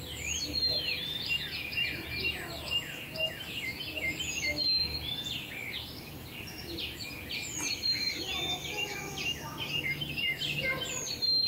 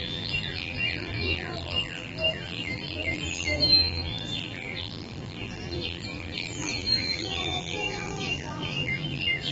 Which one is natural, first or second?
first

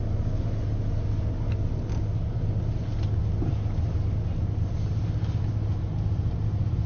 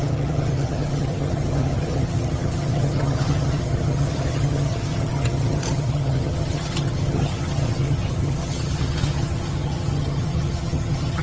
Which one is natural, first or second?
first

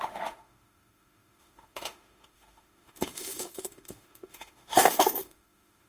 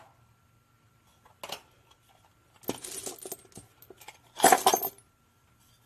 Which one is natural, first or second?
second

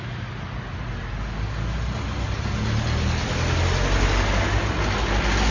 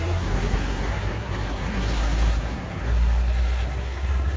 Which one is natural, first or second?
first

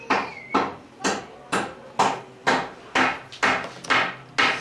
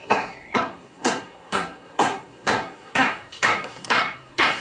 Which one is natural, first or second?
first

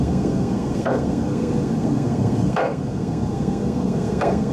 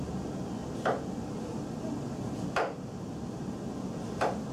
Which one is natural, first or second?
second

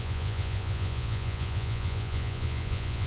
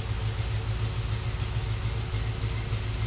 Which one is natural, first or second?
second